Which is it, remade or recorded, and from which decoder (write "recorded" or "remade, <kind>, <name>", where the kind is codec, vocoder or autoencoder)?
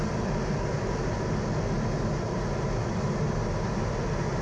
recorded